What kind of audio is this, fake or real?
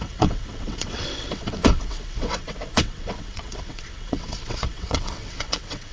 fake